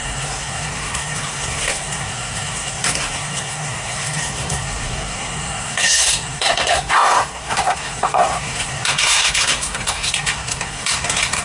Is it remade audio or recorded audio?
remade